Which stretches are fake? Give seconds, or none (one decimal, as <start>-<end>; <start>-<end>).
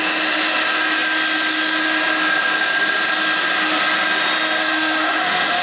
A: 4.6-5.6